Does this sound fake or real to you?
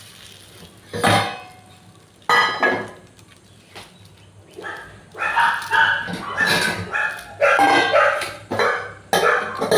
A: real